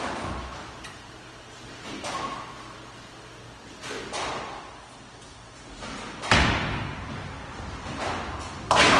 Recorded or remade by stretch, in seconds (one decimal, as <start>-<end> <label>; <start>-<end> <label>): 0.0-9.0 recorded